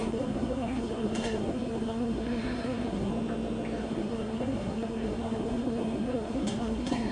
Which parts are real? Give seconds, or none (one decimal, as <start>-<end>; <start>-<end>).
3.1-3.8